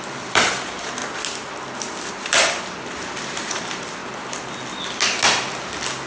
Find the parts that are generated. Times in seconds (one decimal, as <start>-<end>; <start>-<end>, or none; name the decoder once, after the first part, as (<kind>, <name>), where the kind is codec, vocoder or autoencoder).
0.0-1.0 (vocoder, BigVGAN v2); 2.1-4.0